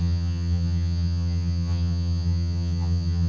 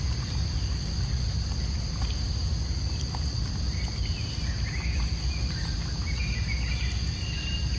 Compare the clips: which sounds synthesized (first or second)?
first